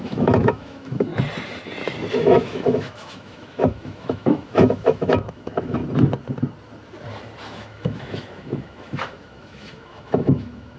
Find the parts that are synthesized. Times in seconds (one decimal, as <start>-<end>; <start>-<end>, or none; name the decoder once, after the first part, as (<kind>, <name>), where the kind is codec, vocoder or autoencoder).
0.0-1.1 (autoencoder, DAC-VAE); 2.1-5.8; 7.5-10.8

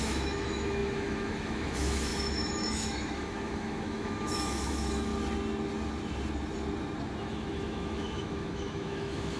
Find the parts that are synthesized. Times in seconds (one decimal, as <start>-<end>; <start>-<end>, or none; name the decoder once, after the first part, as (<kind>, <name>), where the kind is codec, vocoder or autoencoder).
0.0-5.1 (autoencoder, DAC-VAE); 7.2-9.4

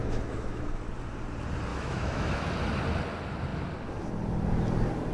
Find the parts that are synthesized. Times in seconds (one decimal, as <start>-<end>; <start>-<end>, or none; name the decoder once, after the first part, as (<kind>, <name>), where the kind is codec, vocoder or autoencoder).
0.0-0.8 (autoencoder, DAC-VAE); 1.7-2.5

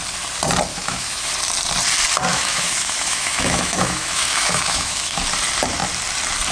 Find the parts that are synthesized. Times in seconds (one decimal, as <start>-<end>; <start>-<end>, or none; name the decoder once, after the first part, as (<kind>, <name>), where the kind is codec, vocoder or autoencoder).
0.7-1.3 (autoencoder, DAC-VAE); 2.3-5.2

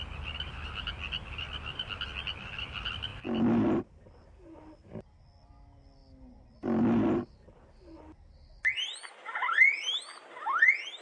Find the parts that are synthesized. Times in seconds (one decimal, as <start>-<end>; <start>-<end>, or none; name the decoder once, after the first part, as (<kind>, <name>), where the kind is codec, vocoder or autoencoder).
none

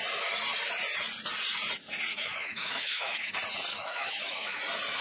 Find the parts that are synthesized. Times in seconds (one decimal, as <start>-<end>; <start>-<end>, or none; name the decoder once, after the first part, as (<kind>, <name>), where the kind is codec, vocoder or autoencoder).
2.1-3.3 (autoencoder, DAC-VAE); 3.7-4.6